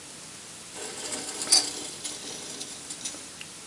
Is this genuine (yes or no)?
yes